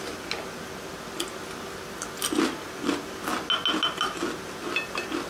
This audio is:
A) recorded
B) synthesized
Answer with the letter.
A